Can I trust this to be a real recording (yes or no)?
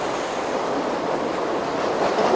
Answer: yes